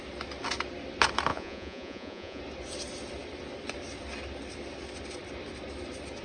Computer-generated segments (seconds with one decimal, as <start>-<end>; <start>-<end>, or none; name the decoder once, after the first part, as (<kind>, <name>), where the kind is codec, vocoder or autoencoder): 1.3-2.4 (vocoder, Vocos)